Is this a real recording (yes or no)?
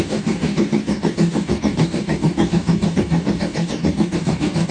no